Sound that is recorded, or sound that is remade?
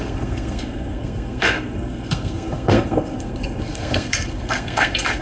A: remade